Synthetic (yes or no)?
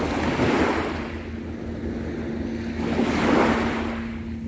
no